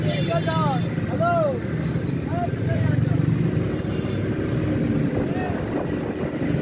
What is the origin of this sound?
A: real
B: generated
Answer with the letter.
A